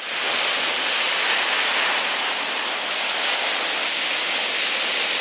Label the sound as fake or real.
real